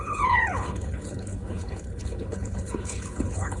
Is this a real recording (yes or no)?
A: no